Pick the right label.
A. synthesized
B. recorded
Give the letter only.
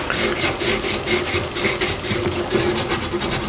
B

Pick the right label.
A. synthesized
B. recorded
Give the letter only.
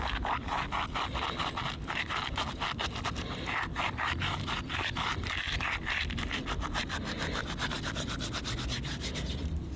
B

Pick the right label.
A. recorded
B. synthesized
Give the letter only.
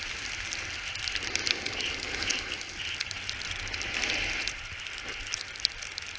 A